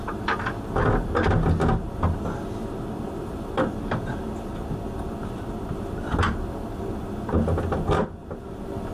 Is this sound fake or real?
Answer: real